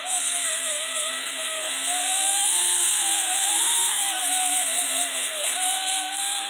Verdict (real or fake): fake